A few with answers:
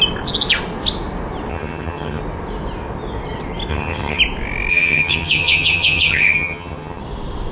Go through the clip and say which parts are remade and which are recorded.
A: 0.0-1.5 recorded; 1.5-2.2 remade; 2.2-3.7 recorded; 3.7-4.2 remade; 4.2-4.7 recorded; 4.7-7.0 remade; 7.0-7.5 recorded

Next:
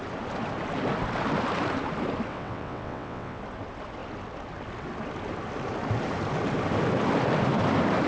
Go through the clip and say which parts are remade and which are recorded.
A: 0.0-2.3 recorded; 2.3-3.4 remade; 3.4-8.1 recorded